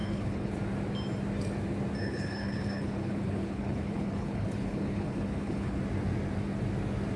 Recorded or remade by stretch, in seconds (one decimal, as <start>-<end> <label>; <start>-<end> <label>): 0.0-0.5 remade; 0.5-2.0 recorded; 2.0-5.8 remade; 5.8-7.2 recorded